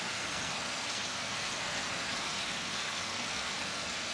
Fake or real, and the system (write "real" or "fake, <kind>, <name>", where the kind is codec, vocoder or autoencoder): fake, codec, SNAC